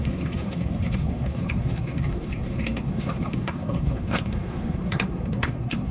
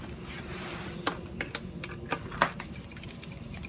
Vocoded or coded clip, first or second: first